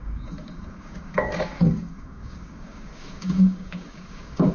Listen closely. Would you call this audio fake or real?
fake